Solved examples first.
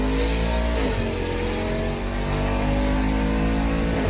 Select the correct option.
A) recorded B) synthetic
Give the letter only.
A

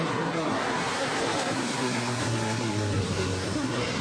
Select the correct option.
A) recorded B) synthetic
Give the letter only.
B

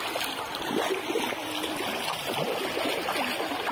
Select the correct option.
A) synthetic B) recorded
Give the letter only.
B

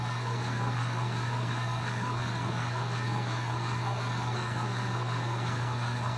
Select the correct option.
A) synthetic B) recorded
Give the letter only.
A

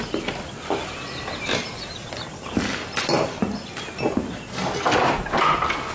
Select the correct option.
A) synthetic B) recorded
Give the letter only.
B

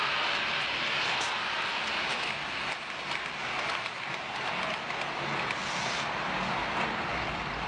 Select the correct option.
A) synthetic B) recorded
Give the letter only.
B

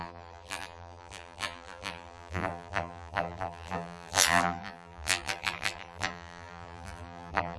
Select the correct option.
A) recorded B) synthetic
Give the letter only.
B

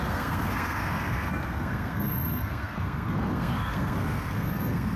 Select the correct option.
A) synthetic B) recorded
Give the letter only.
A